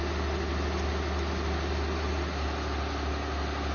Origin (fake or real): real